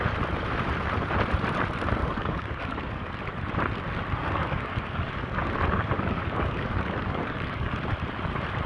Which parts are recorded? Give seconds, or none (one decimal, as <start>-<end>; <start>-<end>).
0.0-2.0; 3.1-4.2; 7.7-8.7